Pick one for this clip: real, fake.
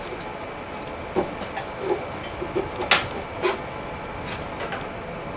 real